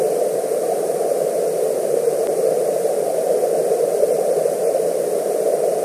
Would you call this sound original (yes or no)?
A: yes